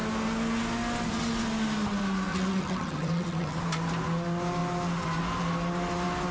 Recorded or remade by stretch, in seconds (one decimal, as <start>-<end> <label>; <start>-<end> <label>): 0.0-2.3 recorded; 2.3-3.6 remade; 3.6-6.3 recorded